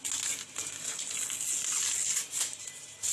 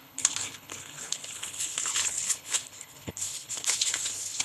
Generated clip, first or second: second